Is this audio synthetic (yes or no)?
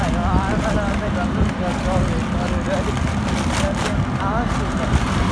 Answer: no